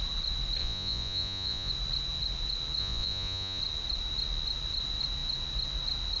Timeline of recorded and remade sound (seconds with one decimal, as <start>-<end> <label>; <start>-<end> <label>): 0.0-0.6 recorded; 0.6-1.7 remade; 1.7-2.8 recorded; 2.8-3.6 remade; 3.6-6.2 recorded